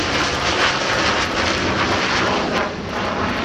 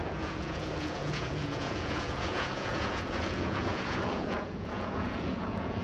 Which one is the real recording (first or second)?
first